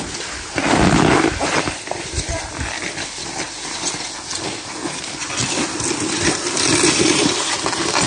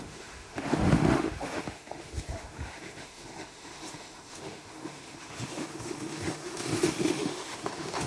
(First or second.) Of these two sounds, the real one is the first